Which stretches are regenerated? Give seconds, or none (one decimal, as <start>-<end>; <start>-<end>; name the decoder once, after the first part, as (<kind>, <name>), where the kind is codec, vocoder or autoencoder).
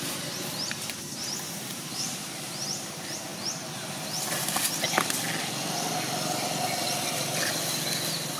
0.0-3.3 (vocoder, BigVGAN v2)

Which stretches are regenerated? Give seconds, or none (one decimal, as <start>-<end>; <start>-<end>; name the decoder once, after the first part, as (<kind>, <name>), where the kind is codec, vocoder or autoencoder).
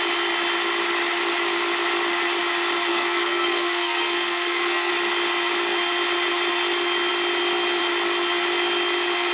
2.9-4.9 (codec, SNAC)